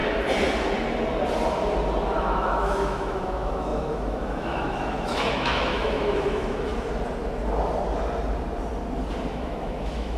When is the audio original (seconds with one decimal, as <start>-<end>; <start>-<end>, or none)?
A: 0.0-2.2; 6.7-9.3